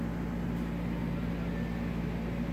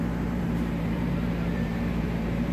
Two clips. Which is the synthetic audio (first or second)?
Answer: second